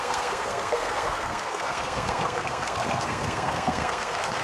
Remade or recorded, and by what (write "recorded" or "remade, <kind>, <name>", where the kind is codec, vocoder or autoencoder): remade, codec, SNAC